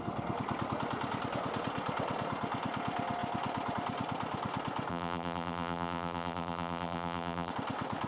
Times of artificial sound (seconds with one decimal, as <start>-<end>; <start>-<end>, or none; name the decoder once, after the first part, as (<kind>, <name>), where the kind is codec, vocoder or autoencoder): 4.9-7.5 (vocoder, BigVGAN v2)